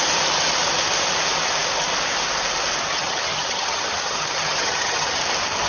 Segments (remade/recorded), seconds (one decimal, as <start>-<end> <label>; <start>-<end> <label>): 0.0-2.9 recorded; 2.9-5.2 remade; 5.2-5.7 recorded